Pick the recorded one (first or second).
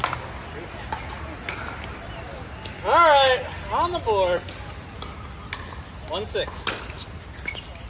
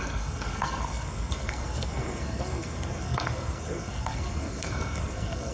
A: first